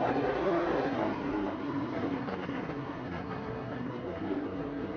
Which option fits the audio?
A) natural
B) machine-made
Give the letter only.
B